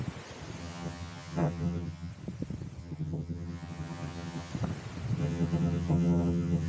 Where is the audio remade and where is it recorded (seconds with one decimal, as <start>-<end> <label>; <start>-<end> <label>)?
0.0-0.6 recorded; 0.6-2.1 remade; 2.1-2.8 recorded; 2.8-4.5 remade; 4.5-5.2 recorded; 5.2-6.7 remade